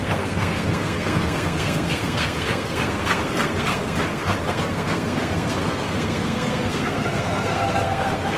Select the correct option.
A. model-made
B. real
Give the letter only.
A